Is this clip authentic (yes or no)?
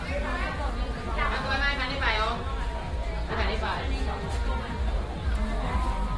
yes